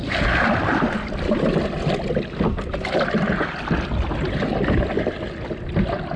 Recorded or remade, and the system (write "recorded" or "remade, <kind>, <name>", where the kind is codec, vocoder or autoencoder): recorded